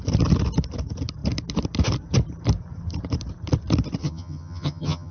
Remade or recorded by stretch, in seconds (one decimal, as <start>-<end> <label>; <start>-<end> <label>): 0.0-4.0 recorded; 4.0-5.1 remade